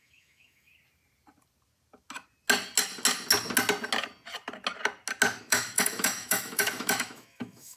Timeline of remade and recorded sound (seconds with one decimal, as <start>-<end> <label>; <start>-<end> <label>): 0.0-0.7 remade; 0.7-5.4 recorded; 5.4-7.8 remade